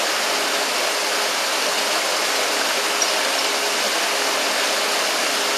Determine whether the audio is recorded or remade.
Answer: recorded